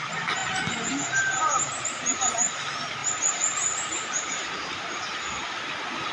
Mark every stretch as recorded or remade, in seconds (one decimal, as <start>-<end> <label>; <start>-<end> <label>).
0.0-3.0 recorded; 3.0-4.8 remade; 4.8-6.1 recorded